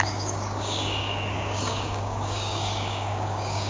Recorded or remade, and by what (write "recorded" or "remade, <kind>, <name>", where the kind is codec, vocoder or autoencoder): remade, codec, DAC